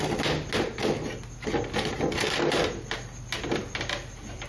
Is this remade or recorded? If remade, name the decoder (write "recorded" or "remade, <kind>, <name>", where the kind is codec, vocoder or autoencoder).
recorded